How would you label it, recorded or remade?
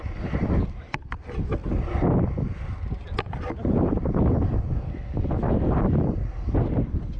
recorded